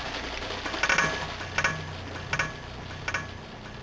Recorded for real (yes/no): yes